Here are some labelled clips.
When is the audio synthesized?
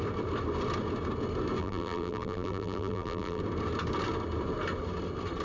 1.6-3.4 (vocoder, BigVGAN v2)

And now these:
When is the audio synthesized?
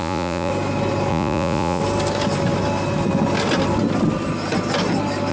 0.0-0.5 (vocoder, Vocos); 1.1-1.8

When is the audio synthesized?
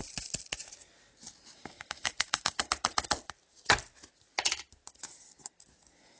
1.5-2.7 (codec, DAC)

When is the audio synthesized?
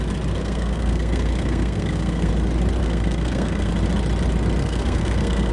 0.4-2.3 (codec, SNAC); 2.8-3.7; 4.6-5.5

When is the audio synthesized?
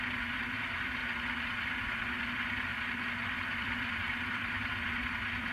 0.0-1.0 (vocoder, BigVGAN v2); 2.3-2.7; 3.3-5.5